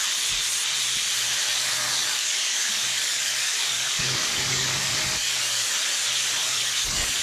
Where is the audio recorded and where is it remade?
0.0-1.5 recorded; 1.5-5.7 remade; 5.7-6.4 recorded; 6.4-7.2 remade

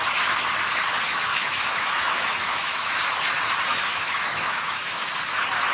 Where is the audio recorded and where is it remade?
0.0-1.3 recorded; 1.3-3.0 remade; 3.0-3.7 recorded; 3.7-5.0 remade; 5.0-5.7 recorded

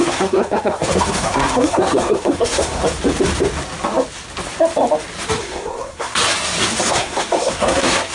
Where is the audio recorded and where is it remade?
0.0-2.8 remade; 2.8-5.4 recorded; 5.4-6.2 remade; 6.2-6.9 recorded; 6.9-8.1 remade